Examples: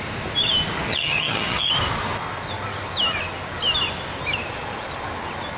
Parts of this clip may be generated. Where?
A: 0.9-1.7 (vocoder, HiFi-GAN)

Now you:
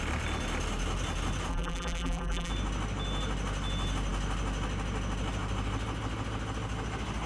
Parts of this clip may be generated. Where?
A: 1.5-2.5 (vocoder, BigVGAN v2)

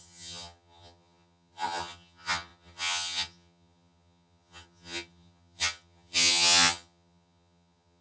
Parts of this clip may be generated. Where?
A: 0.0-8.0 (vocoder, HiFi-GAN)